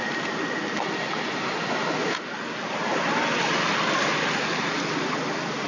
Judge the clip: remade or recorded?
recorded